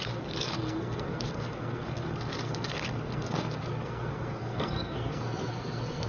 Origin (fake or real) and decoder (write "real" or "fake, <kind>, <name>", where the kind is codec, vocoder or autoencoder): fake, codec, SNAC